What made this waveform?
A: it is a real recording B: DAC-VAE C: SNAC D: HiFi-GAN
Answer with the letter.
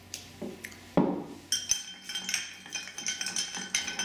A